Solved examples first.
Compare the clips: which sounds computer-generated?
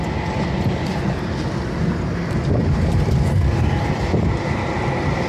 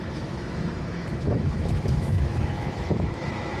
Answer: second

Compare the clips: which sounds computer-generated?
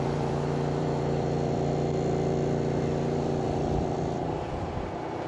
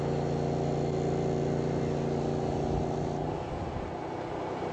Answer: first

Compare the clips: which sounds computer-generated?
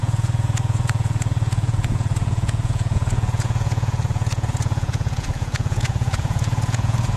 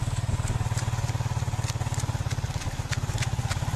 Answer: first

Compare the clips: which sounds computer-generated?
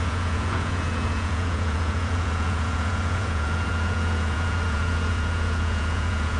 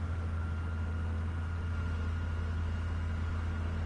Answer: first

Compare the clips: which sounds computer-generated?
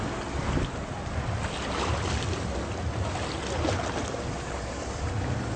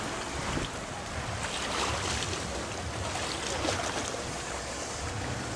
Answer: second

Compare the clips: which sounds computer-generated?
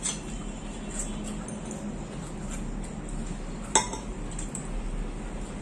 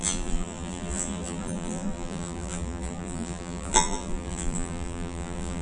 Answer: second